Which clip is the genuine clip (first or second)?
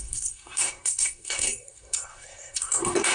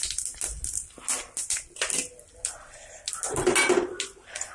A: second